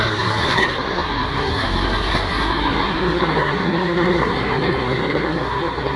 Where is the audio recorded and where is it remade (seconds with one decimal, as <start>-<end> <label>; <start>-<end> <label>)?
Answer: 0.0-6.0 remade